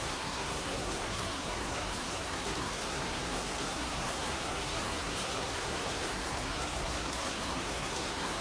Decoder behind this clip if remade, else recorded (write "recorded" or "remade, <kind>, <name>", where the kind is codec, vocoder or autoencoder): remade, codec, SNAC